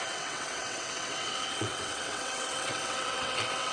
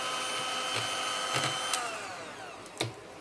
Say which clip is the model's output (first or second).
first